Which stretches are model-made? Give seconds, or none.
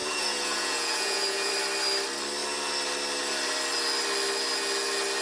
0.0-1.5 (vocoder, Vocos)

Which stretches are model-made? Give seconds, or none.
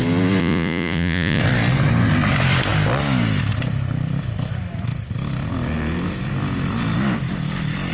0.4-1.4 (vocoder, Vocos)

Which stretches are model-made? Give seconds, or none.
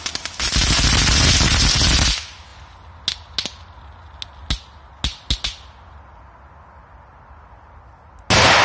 none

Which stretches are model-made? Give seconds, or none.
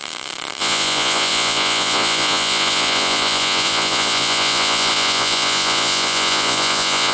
0.6-7.1 (vocoder, Vocos)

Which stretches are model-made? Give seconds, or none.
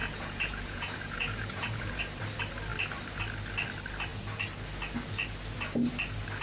0.0-2.0 (vocoder, Vocos)